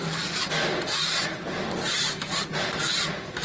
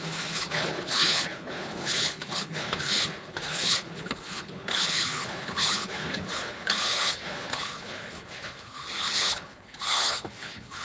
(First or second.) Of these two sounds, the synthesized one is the second